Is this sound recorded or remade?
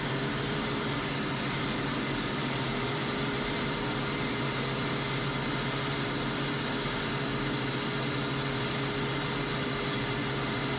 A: recorded